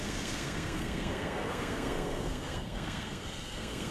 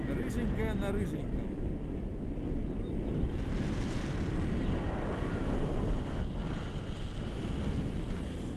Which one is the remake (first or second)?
first